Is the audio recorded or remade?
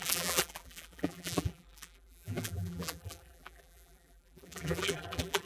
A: remade